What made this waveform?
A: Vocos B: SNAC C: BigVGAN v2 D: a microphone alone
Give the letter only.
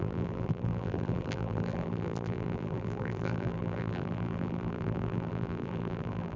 C